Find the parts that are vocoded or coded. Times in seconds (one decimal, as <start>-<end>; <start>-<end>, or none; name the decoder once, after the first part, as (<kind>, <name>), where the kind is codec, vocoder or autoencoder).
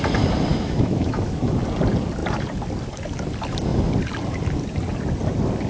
0.5-1.6 (autoencoder, DAC-VAE)